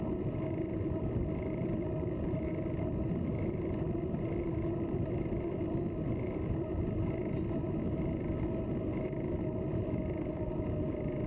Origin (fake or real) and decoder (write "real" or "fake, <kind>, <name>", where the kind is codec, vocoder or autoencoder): real